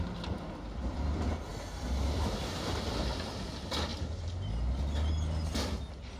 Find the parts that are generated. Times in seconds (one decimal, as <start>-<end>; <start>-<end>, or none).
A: 0.0-3.9